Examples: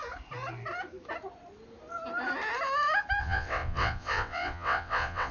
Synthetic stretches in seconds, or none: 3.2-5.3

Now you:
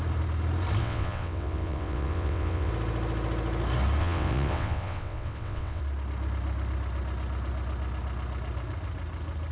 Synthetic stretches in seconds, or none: 0.8-2.7; 4.0-5.8

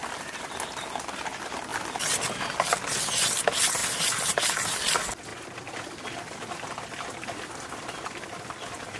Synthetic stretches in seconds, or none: 0.0-0.9; 3.8-4.4